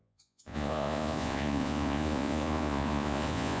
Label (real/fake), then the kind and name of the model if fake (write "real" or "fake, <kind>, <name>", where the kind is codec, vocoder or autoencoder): fake, vocoder, Vocos